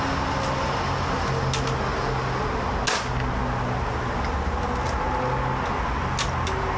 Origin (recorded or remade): recorded